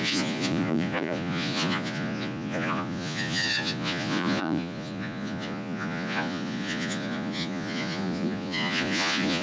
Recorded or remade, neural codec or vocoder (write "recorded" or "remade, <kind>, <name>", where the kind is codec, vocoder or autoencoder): remade, vocoder, Vocos